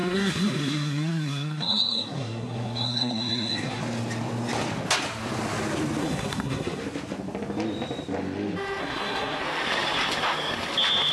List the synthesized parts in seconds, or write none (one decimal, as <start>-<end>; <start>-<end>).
0.0-3.8; 6.0-6.8; 8.8-9.4